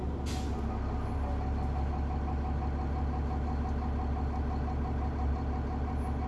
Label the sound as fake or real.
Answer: real